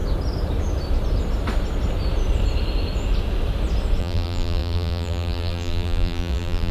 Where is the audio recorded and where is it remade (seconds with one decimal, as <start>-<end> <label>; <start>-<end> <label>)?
0.0-4.0 recorded; 4.0-6.7 remade